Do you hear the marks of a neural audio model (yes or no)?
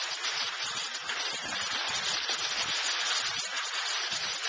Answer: no